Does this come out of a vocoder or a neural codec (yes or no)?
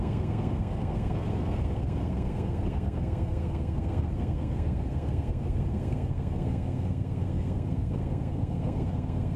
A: yes